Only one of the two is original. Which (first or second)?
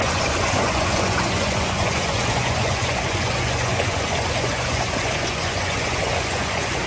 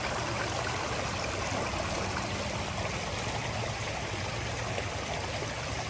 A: second